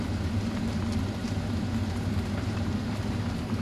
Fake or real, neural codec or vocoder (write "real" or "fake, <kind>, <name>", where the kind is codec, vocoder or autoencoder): fake, vocoder, BigVGAN v2